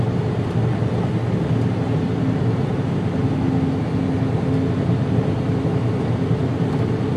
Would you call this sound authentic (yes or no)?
yes